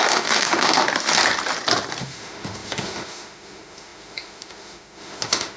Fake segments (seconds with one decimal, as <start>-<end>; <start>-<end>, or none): 0.0-0.8; 2.0-5.6